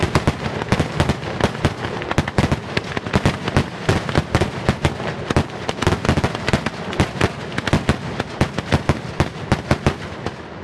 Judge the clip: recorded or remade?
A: recorded